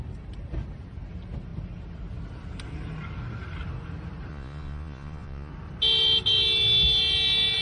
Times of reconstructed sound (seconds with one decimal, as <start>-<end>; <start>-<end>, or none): 4.3-5.5